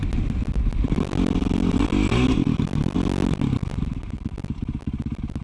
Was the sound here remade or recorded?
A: recorded